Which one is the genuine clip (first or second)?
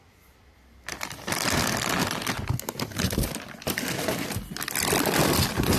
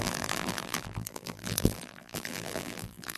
first